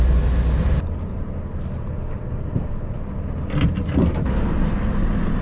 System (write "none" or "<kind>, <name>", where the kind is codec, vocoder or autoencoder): none